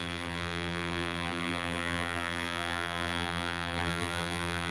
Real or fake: fake